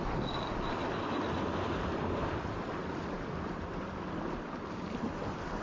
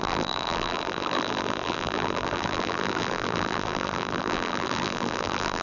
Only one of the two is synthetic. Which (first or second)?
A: second